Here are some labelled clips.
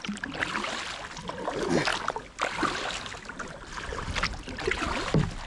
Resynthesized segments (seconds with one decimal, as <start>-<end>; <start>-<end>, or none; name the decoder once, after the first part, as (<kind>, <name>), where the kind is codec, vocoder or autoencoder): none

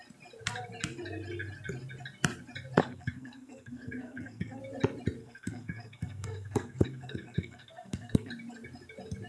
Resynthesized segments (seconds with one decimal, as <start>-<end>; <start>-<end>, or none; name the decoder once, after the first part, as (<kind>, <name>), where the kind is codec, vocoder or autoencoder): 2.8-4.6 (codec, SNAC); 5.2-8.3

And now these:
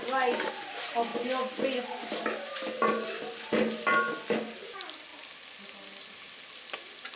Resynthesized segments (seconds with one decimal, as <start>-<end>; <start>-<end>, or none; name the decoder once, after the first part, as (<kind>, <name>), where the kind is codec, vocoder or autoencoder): none